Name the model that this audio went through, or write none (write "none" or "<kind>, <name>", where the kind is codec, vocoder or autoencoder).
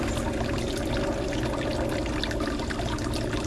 none